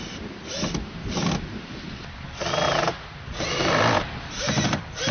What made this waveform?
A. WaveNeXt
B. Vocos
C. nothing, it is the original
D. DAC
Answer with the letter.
C